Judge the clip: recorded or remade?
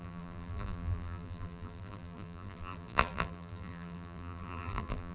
remade